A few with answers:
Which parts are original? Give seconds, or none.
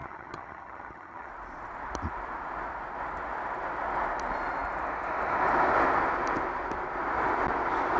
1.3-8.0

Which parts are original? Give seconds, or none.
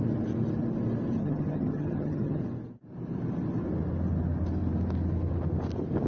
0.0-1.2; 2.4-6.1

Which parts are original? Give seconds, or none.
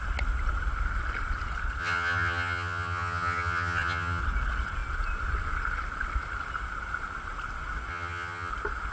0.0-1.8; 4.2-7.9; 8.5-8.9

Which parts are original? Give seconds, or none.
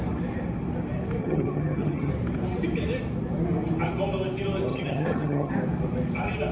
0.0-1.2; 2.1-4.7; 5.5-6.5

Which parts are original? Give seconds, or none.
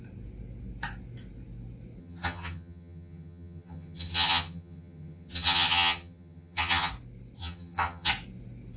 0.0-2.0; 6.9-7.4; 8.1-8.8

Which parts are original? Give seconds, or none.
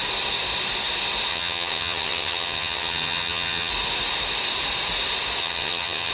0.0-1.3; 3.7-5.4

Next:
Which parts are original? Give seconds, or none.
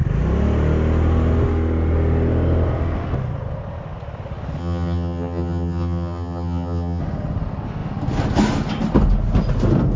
0.0-4.6; 7.0-10.0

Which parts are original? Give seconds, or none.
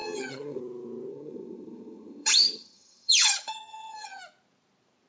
0.6-1.1; 4.2-5.1